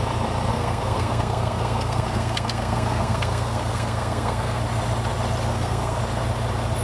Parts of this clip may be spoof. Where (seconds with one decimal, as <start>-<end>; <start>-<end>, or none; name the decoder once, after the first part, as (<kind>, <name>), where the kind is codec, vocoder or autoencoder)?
0.5-4.6 (codec, SNAC); 5.5-6.0